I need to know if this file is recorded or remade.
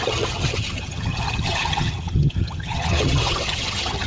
remade